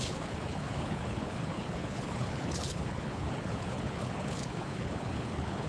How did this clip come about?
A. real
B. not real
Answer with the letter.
B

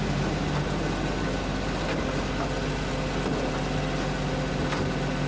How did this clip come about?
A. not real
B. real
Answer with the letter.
B